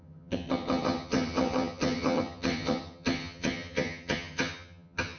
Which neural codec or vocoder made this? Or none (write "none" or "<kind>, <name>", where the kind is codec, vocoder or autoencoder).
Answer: vocoder, HiFi-GAN